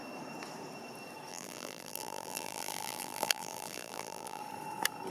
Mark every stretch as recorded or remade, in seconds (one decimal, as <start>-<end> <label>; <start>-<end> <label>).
0.0-1.3 recorded; 1.3-4.4 remade; 4.4-5.1 recorded